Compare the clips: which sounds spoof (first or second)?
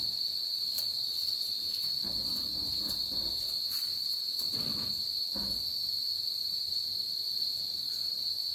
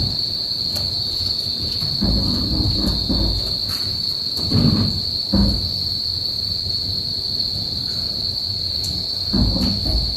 first